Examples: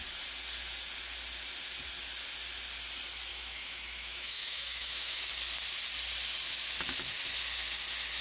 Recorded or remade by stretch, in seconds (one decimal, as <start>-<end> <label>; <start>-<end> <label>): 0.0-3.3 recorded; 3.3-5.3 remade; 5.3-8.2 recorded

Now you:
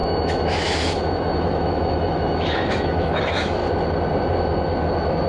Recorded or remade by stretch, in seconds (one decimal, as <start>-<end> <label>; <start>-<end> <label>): 0.0-3.6 remade; 3.6-5.3 recorded

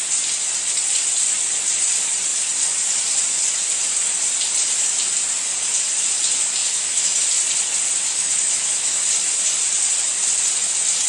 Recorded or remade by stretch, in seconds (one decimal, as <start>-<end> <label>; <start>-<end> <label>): 0.0-6.6 recorded; 6.6-7.3 remade; 7.3-8.1 recorded; 8.1-9.0 remade; 9.0-11.1 recorded

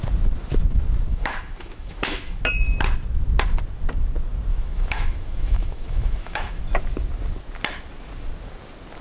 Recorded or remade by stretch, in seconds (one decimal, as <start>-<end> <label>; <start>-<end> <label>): 0.0-1.1 recorded; 1.1-2.4 remade; 2.4-4.5 recorded; 4.5-6.6 remade; 6.6-9.0 recorded

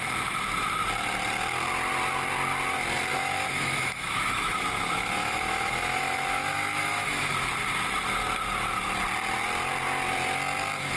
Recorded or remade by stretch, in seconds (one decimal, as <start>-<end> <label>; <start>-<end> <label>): 0.0-3.1 recorded; 3.1-7.3 remade; 7.3-11.0 recorded

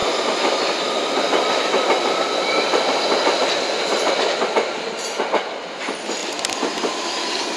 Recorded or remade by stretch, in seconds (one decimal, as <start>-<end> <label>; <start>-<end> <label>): 0.0-7.6 recorded

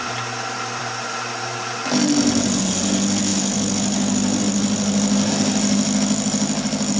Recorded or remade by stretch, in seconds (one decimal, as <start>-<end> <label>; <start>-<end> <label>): 0.0-7.0 recorded

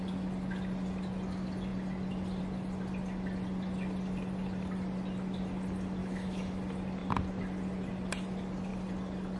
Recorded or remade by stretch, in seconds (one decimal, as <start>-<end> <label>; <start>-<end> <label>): 0.0-6.0 recorded; 6.0-6.6 remade; 6.6-9.4 recorded